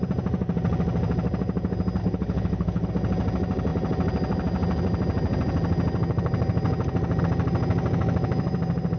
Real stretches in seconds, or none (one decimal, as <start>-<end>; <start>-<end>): 0.0-2.0; 2.9-9.0